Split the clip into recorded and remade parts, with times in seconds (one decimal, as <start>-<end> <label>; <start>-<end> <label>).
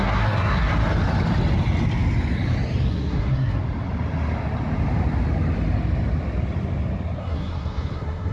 0.0-0.7 remade; 0.7-2.9 recorded; 2.9-3.6 remade; 3.6-7.2 recorded; 7.2-8.3 remade